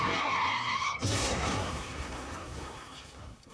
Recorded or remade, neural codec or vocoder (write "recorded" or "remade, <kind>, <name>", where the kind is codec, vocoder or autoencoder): remade, codec, SNAC